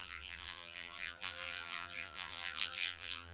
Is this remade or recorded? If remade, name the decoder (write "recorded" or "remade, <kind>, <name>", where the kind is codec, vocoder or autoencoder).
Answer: remade, vocoder, BigVGAN v2